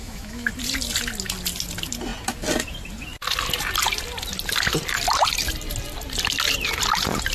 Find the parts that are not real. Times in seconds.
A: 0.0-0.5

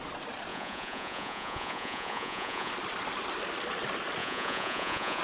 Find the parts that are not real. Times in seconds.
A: 0.5-2.7; 4.2-5.2

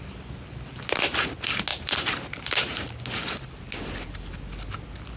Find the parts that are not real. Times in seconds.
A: none

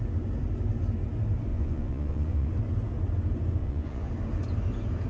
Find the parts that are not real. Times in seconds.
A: 1.5-2.5; 3.6-4.1